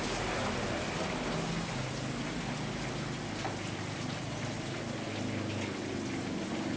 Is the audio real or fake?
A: real